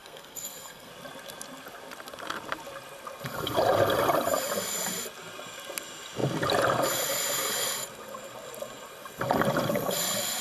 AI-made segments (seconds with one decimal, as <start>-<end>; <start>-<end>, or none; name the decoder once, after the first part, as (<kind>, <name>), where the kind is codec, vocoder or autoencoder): 0.0-0.9 (codec, SNAC)